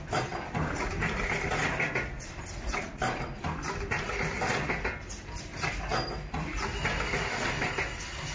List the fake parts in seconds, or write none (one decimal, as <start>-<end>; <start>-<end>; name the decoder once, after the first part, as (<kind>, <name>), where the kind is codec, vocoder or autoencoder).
0.0-5.9 (vocoder, BigVGAN v2); 7.6-8.3